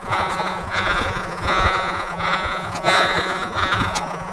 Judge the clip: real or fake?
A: fake